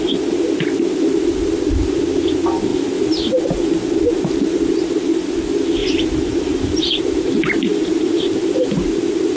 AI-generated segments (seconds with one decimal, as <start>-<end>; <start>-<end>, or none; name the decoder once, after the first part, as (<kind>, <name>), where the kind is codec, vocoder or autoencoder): 5.8-6.6 (vocoder, BigVGAN v2); 7.7-8.3